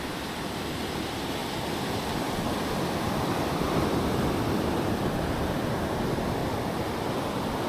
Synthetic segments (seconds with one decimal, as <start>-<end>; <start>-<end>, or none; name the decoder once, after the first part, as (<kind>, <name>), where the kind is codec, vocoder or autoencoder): 1.4-4.7 (vocoder, BigVGAN v2); 6.4-7.0